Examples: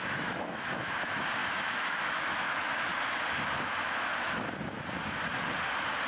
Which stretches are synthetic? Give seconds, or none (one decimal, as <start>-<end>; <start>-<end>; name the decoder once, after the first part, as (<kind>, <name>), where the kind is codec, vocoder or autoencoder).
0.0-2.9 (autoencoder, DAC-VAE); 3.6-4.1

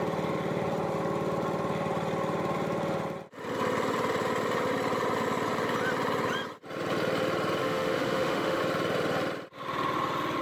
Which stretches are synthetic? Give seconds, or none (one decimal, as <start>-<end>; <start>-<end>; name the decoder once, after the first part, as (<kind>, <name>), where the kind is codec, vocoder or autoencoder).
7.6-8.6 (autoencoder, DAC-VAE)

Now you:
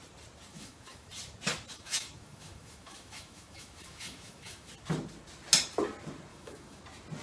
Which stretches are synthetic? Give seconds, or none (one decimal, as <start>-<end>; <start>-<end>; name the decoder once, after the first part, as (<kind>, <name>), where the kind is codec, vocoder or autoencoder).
0.5-1.1 (autoencoder, DAC-VAE); 1.7-4.7; 6.3-6.8